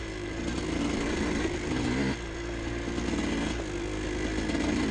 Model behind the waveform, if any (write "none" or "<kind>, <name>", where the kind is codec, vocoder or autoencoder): none